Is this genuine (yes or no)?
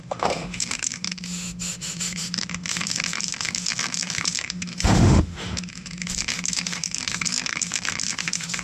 no